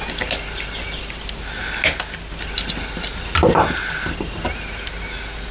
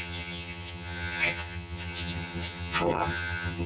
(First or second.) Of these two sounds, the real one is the first